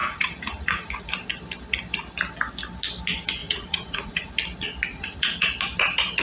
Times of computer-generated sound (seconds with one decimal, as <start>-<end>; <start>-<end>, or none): 0.0-1.1; 3.4-4.3; 4.9-5.5